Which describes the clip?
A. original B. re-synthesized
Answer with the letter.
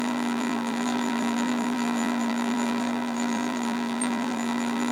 B